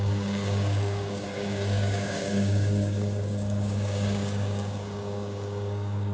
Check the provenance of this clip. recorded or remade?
remade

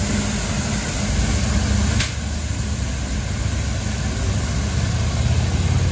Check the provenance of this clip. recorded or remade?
recorded